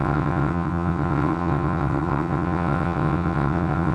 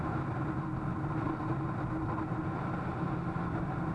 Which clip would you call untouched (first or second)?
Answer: second